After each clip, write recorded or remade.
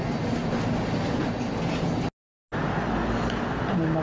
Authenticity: recorded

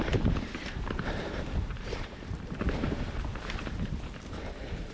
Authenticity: remade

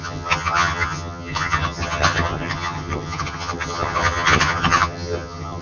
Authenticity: remade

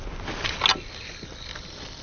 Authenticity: recorded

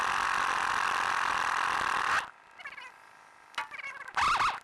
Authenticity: recorded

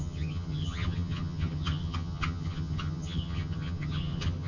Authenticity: remade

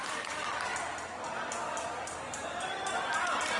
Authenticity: remade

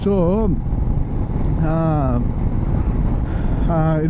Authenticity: recorded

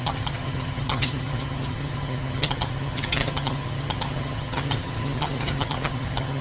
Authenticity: remade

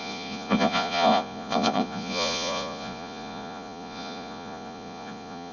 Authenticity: remade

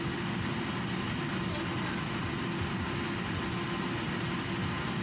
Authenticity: recorded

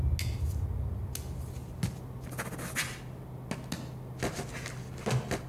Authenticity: recorded